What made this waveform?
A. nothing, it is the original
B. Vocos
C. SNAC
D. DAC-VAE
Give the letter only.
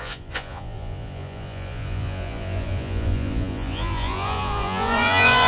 B